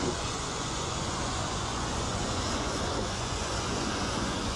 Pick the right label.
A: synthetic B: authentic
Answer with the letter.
A